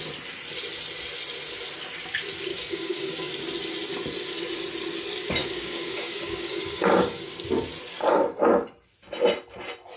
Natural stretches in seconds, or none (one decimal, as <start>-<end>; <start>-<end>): 0.0-2.5; 3.3-5.4; 7.5-10.0